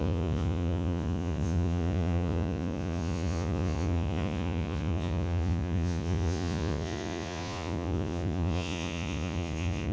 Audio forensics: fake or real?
fake